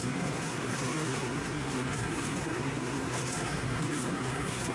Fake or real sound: fake